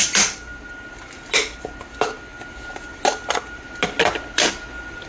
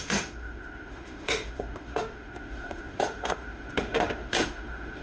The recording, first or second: first